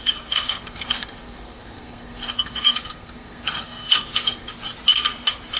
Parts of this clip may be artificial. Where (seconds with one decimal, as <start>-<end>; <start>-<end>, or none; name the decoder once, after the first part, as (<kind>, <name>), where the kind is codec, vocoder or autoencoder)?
0.0-4.5 (codec, SNAC)